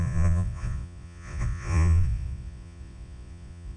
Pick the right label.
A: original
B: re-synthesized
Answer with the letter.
B